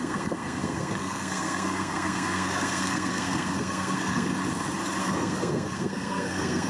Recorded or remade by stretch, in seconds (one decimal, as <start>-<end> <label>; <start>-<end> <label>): 0.0-4.4 remade; 4.4-5.0 recorded; 5.0-6.7 remade